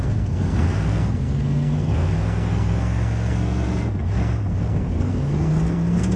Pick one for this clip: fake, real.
fake